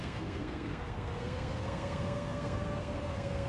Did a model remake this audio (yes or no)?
yes